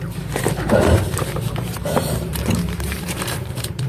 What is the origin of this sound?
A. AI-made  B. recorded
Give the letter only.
A